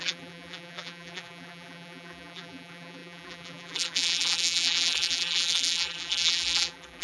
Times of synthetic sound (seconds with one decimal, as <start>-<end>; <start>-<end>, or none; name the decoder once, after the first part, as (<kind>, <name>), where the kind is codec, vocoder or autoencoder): 0.0-7.0 (vocoder, BigVGAN v2)